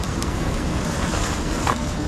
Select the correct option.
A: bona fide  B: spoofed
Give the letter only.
B